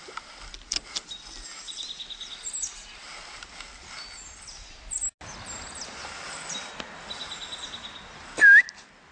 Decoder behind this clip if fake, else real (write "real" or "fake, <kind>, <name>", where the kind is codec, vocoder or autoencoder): real